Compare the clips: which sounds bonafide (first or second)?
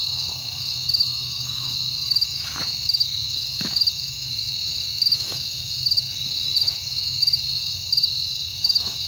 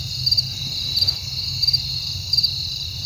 second